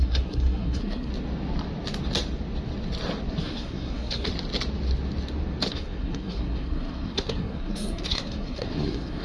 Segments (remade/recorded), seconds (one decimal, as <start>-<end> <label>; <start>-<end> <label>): 0.0-1.1 remade; 1.1-3.4 recorded; 3.4-4.3 remade; 4.3-5.7 recorded; 5.7-9.2 remade